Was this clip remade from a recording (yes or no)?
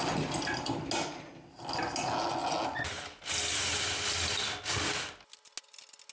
no